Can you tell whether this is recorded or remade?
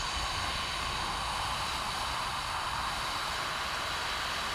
recorded